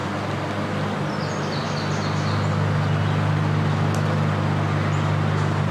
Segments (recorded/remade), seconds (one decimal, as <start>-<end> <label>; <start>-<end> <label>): 0.0-5.7 recorded